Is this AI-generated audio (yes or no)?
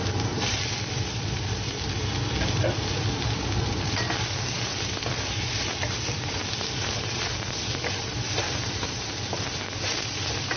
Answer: yes